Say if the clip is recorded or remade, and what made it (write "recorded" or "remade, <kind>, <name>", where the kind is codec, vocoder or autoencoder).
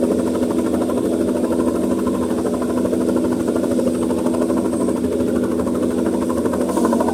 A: recorded